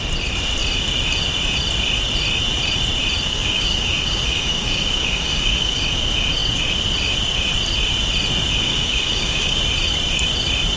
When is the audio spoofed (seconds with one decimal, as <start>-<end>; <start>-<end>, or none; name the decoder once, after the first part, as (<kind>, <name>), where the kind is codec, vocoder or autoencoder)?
3.3-5.8 (codec, DAC); 8.6-9.6